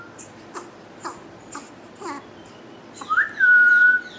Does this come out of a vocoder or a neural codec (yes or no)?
no